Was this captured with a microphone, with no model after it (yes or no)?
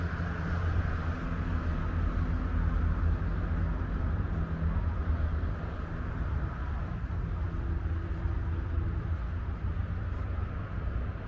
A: yes